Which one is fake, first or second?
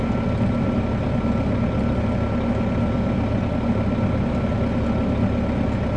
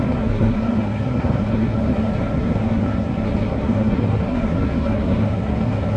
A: second